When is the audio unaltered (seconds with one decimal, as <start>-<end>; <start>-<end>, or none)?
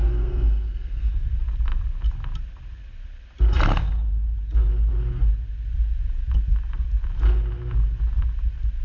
1.1-8.8